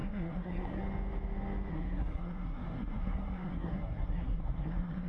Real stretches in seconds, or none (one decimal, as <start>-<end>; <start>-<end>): 0.8-1.7